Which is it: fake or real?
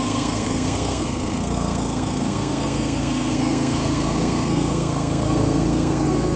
fake